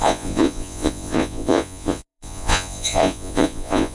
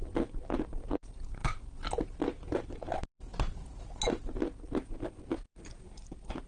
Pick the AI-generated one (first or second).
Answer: first